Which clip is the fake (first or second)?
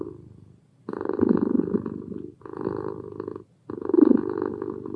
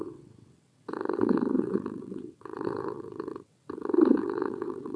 second